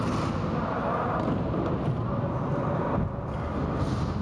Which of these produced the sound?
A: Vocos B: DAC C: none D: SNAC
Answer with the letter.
C